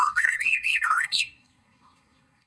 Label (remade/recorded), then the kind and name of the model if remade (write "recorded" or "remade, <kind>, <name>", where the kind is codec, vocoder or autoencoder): remade, codec, SNAC